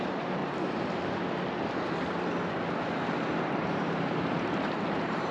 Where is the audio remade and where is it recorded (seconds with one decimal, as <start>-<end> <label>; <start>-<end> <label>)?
0.0-0.4 remade; 0.4-3.6 recorded; 3.6-5.3 remade